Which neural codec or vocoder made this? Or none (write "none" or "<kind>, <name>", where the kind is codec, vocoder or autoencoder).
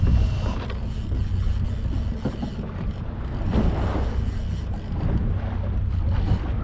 none